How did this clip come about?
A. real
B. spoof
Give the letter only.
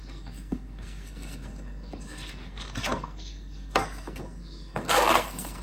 B